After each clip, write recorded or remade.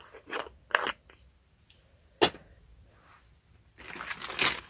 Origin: recorded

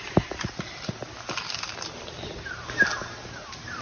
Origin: recorded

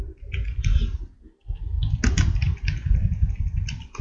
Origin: recorded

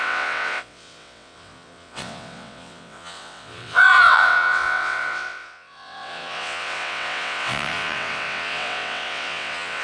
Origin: remade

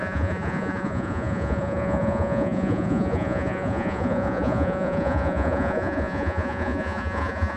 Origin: remade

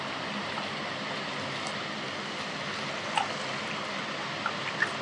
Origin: recorded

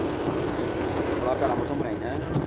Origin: recorded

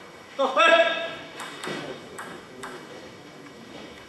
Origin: remade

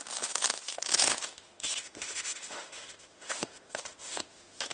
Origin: remade